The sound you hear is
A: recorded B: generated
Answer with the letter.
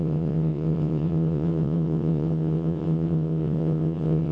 B